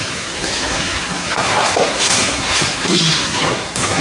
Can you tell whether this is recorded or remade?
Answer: remade